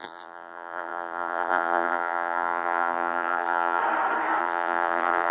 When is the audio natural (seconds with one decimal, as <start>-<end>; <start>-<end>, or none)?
3.8-4.4